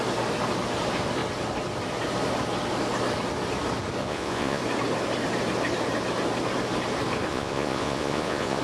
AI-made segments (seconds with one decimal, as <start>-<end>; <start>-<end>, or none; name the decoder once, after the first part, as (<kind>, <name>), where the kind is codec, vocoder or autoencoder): 4.0-4.6 (vocoder, Vocos); 7.3-8.6